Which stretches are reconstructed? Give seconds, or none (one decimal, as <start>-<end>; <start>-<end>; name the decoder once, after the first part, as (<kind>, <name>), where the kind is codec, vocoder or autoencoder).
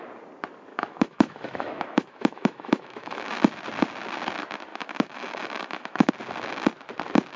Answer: 0.7-3.3 (autoencoder, DAC-VAE); 4.7-6.1